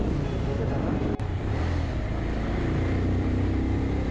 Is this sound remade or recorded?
recorded